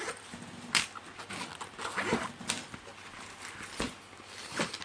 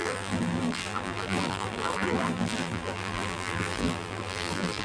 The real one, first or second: first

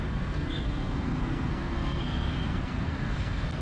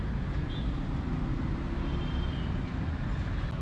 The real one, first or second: second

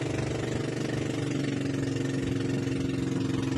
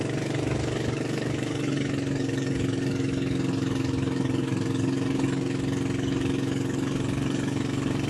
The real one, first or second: first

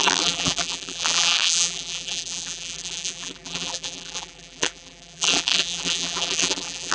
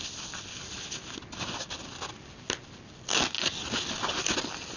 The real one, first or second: second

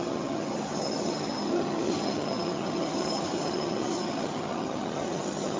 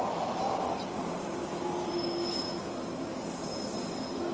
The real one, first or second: second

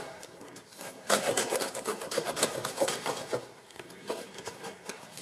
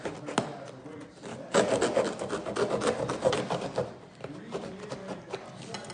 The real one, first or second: second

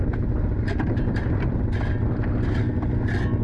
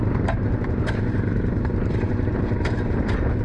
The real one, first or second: first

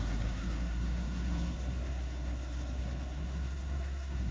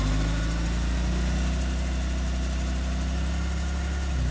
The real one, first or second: second